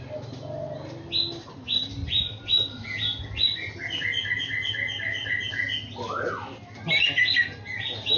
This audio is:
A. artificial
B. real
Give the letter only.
B